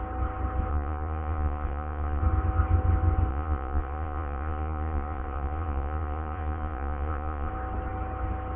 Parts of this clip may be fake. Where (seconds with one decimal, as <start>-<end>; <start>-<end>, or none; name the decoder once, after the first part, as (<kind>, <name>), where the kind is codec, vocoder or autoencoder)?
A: 0.7-2.2 (vocoder, Vocos); 3.3-7.5